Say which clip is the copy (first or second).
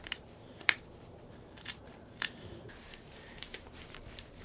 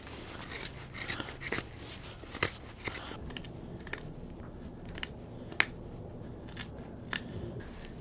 first